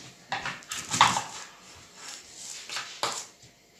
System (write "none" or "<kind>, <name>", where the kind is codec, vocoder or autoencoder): none